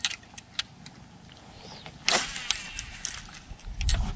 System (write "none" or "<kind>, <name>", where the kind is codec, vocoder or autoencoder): none